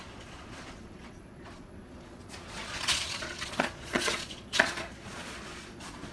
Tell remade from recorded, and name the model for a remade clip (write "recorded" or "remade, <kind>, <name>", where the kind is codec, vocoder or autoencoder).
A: remade, vocoder, Vocos